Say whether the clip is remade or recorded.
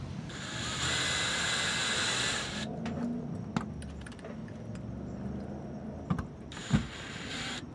recorded